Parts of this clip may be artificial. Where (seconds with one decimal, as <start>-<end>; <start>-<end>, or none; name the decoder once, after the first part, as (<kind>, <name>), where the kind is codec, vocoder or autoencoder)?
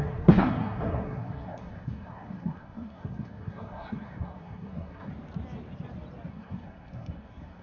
0.0-5.1 (codec, SNAC); 6.3-7.6